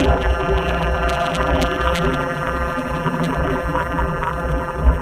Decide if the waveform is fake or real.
fake